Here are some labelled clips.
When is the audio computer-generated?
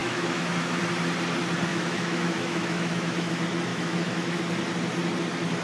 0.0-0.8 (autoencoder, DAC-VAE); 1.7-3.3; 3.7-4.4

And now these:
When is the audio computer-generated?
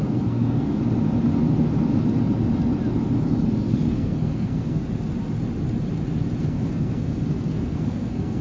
0.0-0.8 (codec, SNAC); 3.7-4.8; 6.4-8.4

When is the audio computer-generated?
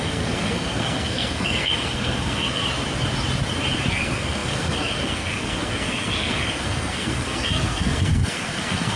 0.0-2.6 (codec, SNAC); 3.9-9.0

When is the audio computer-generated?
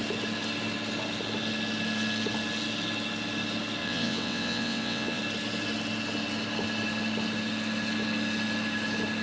3.8-5.2 (vocoder, WaveNeXt)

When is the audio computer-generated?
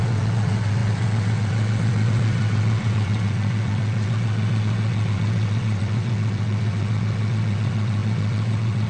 0.0-8.9 (vocoder, WaveNeXt)